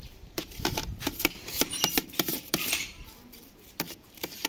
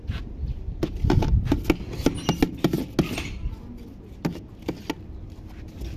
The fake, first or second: first